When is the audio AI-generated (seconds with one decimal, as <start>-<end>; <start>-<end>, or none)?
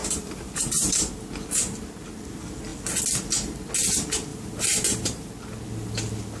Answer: 0.0-1.1; 4.3-5.3